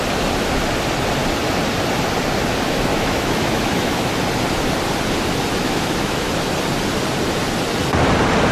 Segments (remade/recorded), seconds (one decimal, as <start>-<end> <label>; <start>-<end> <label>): 0.0-2.9 recorded; 2.9-4.2 remade; 4.2-5.6 recorded; 5.6-6.3 remade; 6.3-8.5 recorded